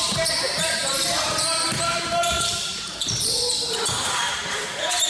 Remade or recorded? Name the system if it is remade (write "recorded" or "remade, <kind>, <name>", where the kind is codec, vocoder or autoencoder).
remade, vocoder, BigVGAN v2